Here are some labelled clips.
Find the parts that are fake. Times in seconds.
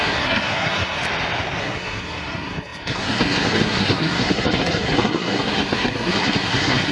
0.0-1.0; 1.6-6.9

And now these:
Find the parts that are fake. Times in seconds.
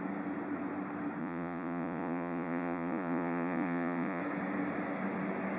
1.2-4.2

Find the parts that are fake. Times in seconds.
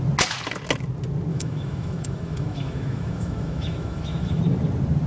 1.3-4.4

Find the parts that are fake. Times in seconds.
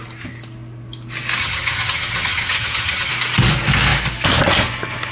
1.4-3.1